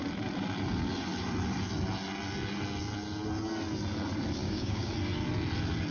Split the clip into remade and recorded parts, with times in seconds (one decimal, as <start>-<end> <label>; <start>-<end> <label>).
0.0-4.4 recorded; 4.4-4.9 remade; 4.9-5.9 recorded